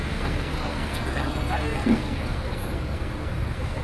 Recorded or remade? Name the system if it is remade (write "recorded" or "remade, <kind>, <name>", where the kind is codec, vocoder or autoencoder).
remade, codec, SNAC